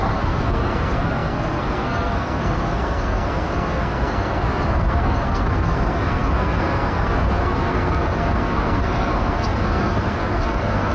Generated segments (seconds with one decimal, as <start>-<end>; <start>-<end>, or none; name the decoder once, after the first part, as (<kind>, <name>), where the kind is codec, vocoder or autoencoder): 0.0-10.9 (codec, SNAC)